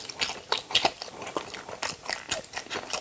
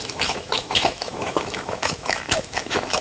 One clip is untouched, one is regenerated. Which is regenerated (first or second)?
second